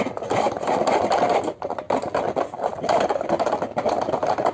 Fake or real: real